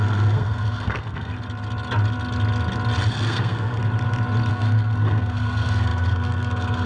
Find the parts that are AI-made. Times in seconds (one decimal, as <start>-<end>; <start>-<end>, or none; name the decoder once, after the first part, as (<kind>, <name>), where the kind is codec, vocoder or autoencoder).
0.0-1.3 (codec, SNAC); 3.1-3.8; 4.5-6.9